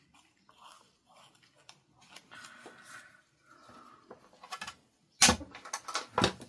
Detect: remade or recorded recorded